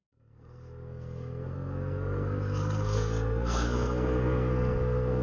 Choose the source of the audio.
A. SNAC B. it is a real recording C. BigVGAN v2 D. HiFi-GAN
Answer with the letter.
A